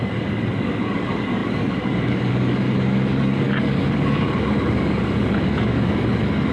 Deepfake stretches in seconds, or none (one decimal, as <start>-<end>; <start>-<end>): 0.0-6.5